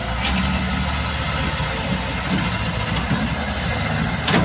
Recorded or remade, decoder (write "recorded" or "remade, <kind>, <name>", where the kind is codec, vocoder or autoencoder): recorded